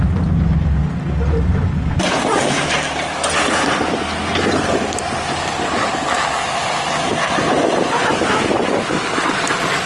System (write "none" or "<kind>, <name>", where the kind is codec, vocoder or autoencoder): none